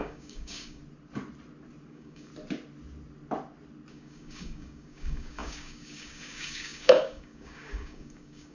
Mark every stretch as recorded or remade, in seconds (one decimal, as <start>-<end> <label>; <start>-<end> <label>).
0.0-0.8 remade; 0.8-1.9 recorded; 1.9-2.3 remade; 2.3-3.9 recorded; 3.9-8.5 remade